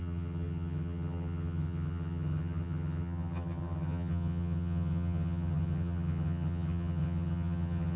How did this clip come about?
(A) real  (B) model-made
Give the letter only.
B